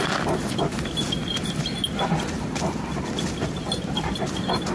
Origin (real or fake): real